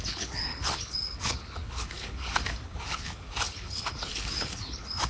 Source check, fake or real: fake